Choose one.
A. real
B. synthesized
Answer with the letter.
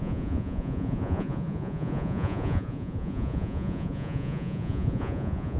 B